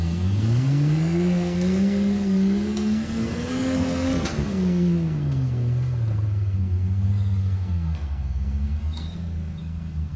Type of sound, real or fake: fake